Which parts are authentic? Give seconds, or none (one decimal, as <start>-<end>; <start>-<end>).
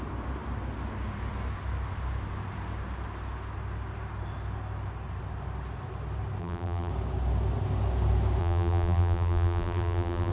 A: 0.0-6.4; 6.9-8.4